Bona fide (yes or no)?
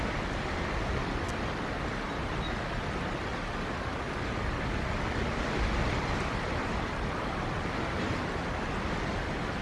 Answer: yes